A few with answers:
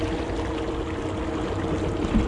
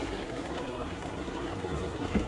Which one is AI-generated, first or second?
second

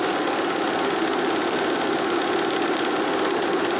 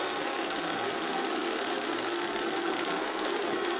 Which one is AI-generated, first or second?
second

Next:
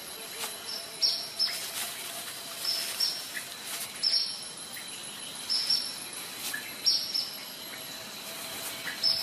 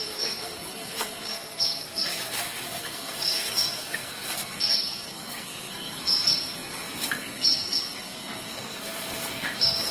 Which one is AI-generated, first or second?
second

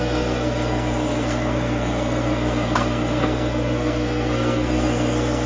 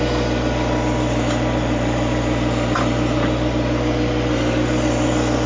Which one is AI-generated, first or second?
first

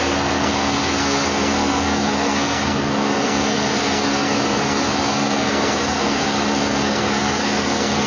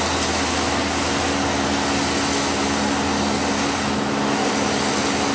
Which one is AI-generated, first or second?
first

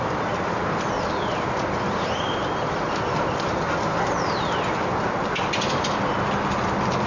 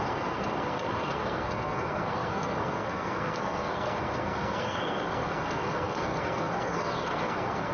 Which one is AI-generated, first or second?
second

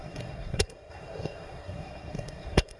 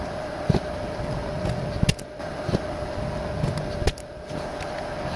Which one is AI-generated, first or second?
first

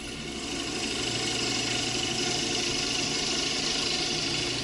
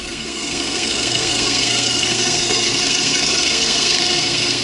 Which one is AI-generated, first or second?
second